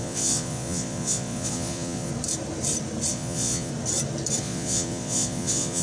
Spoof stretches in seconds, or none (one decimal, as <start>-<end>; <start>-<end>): 0.0-2.1; 3.1-3.7; 4.4-5.8